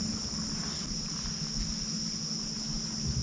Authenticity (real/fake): real